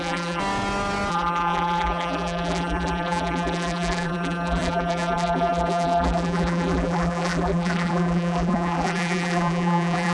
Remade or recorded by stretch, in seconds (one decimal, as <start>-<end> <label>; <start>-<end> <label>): 0.0-0.4 remade; 0.4-1.1 recorded; 1.1-10.1 remade